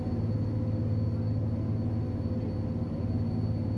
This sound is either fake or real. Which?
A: real